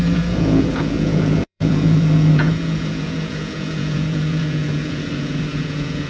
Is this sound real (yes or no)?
no